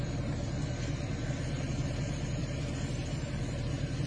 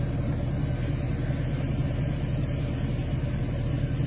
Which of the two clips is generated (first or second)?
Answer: first